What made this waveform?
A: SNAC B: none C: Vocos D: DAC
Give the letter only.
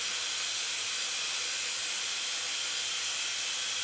B